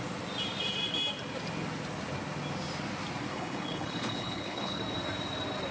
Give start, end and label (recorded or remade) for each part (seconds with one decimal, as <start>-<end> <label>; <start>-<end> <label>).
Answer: 0.0-3.3 recorded; 3.3-4.8 remade; 4.8-5.7 recorded